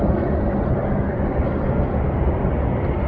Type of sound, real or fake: real